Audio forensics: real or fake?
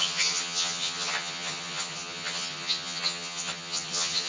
fake